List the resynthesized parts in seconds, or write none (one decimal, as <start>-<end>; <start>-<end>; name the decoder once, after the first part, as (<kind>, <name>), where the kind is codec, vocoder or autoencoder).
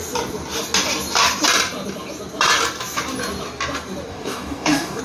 4.1-5.0 (codec, DAC)